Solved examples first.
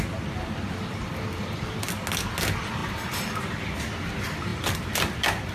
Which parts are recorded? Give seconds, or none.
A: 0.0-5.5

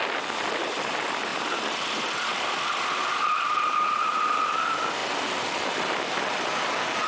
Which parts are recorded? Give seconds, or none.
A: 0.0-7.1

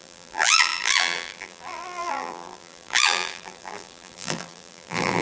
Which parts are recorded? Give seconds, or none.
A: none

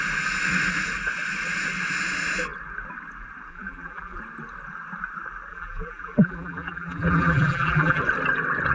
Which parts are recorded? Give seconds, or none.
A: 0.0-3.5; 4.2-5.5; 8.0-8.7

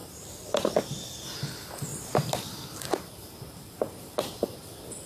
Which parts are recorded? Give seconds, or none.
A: 0.7-1.9

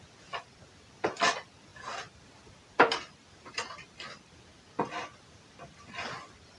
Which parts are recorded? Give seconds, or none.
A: 0.0-6.6